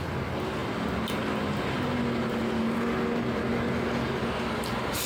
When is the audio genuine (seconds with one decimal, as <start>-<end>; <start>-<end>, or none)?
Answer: 0.0-5.1